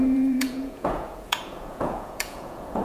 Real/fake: fake